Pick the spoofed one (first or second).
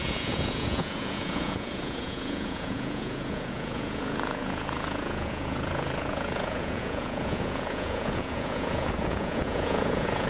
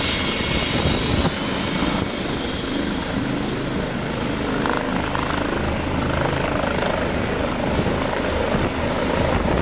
first